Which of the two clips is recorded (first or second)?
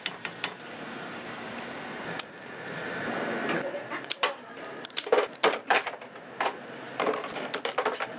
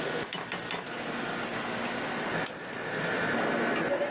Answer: second